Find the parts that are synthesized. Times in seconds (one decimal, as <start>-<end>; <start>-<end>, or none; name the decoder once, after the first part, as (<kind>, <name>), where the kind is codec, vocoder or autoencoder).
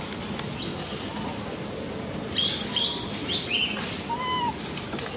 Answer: none